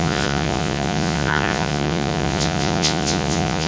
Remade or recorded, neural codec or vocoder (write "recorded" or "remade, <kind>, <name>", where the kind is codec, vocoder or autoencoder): remade, vocoder, Vocos